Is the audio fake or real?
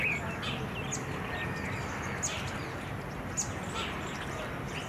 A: real